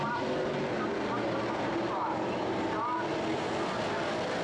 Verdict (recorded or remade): recorded